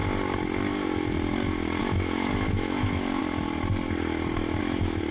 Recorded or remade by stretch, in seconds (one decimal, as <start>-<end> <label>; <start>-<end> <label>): 0.0-1.8 recorded; 1.8-3.2 remade; 3.2-4.6 recorded; 4.6-5.1 remade